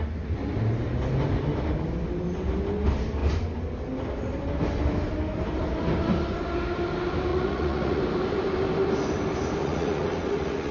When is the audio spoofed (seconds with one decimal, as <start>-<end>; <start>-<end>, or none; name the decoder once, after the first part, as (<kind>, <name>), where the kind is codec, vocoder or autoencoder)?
7.3-8.0 (vocoder, Vocos); 9.6-10.7